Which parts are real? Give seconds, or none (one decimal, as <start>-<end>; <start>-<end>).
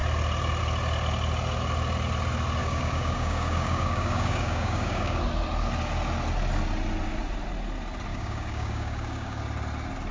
0.0-2.6; 5.2-8.1; 9.4-10.1